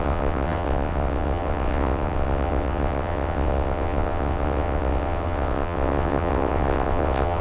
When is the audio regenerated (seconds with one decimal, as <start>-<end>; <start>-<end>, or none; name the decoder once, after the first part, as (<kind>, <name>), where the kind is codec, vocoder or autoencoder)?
0.0-7.4 (vocoder, WaveNeXt)